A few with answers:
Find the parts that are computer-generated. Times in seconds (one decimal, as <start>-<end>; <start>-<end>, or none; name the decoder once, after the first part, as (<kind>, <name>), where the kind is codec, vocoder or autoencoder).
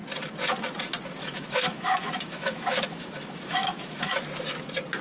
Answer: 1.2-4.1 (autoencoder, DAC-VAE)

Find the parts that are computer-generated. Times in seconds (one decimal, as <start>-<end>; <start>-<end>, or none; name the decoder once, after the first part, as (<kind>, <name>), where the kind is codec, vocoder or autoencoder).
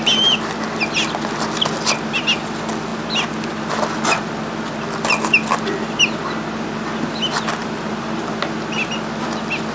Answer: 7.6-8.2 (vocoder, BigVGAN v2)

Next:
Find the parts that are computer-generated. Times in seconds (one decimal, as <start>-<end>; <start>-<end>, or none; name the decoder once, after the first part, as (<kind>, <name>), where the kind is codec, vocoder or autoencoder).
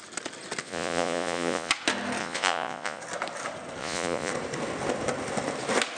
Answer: 0.6-1.7 (vocoder, Vocos); 2.2-3.0; 3.8-4.3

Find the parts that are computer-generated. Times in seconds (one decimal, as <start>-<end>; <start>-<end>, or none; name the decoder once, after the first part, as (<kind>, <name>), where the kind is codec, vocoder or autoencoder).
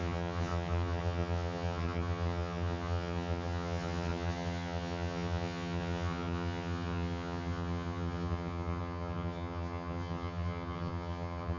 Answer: 0.0-11.6 (vocoder, HiFi-GAN)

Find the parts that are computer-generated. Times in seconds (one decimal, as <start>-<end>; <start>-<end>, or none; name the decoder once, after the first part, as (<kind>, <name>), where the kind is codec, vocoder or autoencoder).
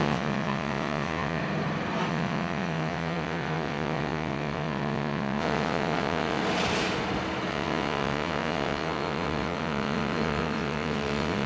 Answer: 0.0-1.4 (vocoder, WaveNeXt); 2.1-6.4; 7.5-11.5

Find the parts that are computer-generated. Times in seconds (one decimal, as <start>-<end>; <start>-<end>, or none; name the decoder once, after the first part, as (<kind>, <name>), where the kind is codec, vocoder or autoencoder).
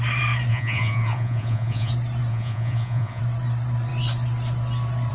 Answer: 0.5-1.9 (vocoder, Vocos); 2.3-3.2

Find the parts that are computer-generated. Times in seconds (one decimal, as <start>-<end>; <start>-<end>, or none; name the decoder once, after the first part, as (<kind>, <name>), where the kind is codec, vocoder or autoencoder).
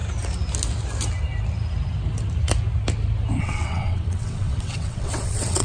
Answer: 3.4-5.6 (vocoder, WaveNeXt)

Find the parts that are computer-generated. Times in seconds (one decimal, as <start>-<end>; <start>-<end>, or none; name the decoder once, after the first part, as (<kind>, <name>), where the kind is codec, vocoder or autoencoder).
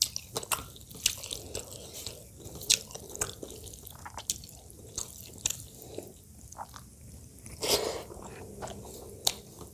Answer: none